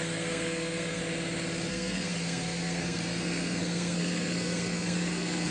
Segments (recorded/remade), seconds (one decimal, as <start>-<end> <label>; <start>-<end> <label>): 0.0-1.0 remade; 1.0-1.7 recorded; 1.7-5.5 remade